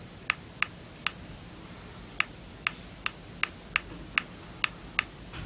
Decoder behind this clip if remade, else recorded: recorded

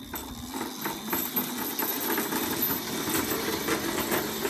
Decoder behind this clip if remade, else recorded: recorded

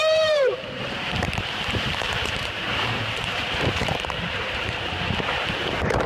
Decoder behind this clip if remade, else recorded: remade, vocoder, BigVGAN v2